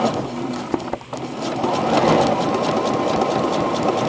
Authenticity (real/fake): real